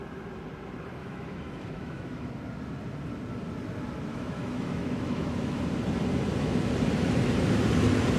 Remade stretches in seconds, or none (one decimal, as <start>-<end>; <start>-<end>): 1.0-2.3; 4.1-5.6